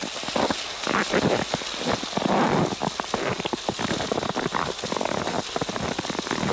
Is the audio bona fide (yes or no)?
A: yes